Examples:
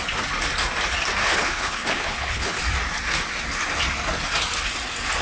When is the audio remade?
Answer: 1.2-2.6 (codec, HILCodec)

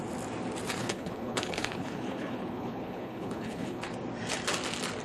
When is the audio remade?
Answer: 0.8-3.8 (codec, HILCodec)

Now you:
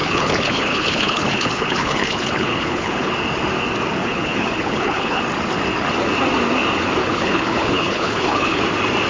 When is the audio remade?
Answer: 0.0-3.1 (codec, HILCodec); 4.0-5.2; 7.0-8.6

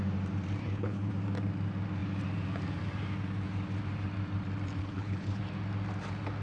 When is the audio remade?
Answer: 0.6-1.1 (codec, HILCodec); 4.8-5.4

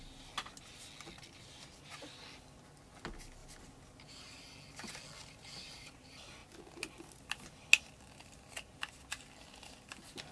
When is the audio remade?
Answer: none

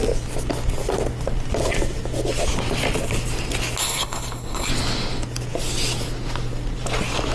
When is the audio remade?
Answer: 3.8-4.7 (codec, HILCodec)

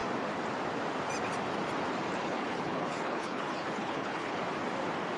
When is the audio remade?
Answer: 2.2-4.4 (codec, HILCodec)